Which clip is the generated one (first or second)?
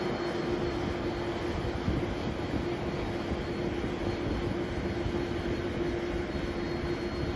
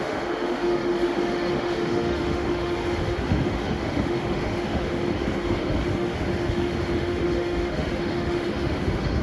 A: second